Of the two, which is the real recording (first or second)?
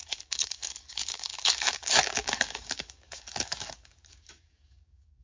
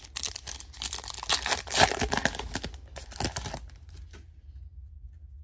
second